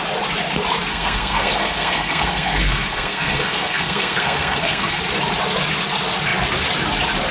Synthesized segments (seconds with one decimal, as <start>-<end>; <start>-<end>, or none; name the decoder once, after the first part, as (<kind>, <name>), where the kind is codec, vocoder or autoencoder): 0.9-5.0 (codec, SNAC)